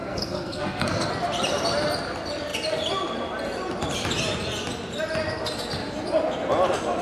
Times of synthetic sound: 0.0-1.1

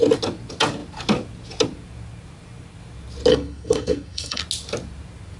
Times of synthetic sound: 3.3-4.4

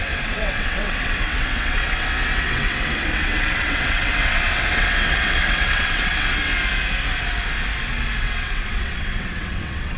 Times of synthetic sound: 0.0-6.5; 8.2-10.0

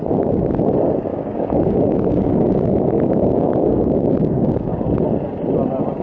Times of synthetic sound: 1.1-4.7

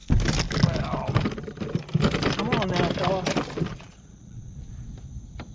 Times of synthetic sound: 3.7-4.7